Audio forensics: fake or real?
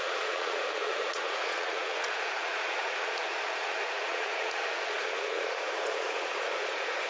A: fake